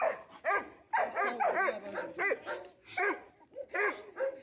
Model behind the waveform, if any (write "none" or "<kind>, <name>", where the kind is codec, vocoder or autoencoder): none